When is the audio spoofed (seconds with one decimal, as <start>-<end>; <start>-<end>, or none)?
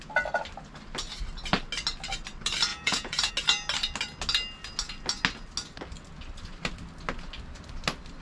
2.7-3.3